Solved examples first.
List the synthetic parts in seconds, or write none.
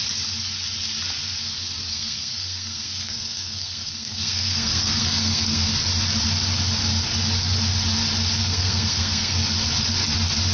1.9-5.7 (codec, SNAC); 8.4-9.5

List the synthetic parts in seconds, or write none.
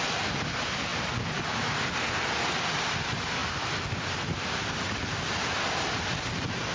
none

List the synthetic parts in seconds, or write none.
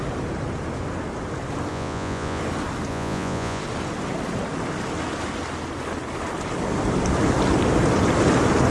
1.7-2.4 (vocoder, Vocos); 2.9-3.6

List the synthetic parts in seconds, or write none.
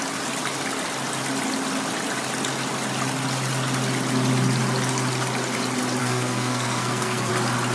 6.0-7.3 (codec, SNAC)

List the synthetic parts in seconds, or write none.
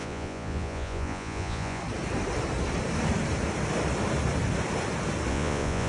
0.0-1.8 (vocoder, Vocos); 5.3-5.9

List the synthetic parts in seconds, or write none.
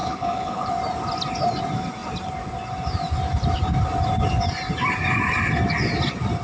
0.0-0.7 (codec, HILCodec)